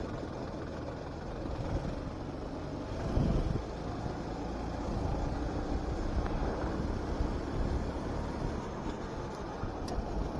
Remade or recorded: recorded